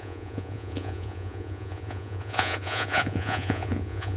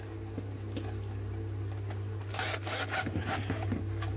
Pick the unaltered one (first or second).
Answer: second